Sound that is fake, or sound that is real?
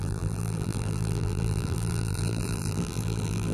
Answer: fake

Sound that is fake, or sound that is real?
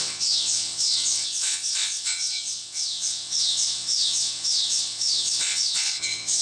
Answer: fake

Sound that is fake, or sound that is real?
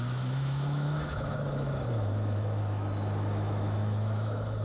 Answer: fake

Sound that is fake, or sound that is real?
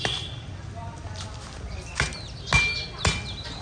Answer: real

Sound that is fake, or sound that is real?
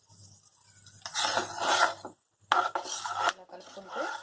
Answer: real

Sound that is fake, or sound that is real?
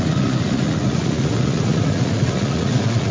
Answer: fake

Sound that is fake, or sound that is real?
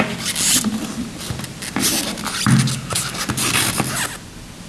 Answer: real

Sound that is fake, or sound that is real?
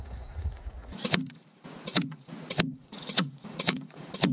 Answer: fake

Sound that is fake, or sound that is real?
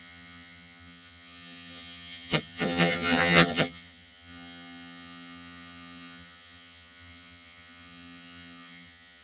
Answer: fake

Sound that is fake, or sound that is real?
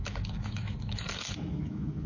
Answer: fake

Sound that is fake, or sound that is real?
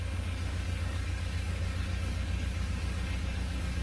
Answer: fake